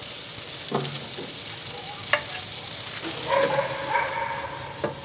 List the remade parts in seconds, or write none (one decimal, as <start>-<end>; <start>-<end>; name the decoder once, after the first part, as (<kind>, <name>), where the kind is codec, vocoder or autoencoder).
none